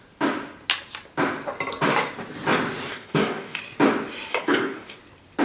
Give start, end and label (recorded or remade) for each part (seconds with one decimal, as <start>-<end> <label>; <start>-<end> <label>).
0.0-2.9 recorded; 2.9-3.6 remade; 3.6-4.3 recorded; 4.3-5.0 remade; 5.0-5.4 recorded